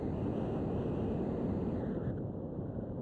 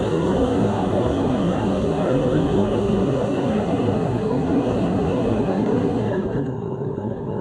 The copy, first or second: second